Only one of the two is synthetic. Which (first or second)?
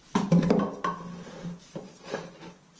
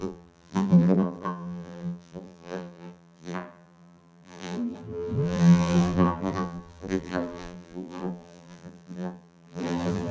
second